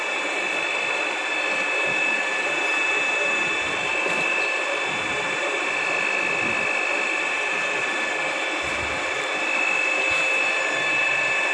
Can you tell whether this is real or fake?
real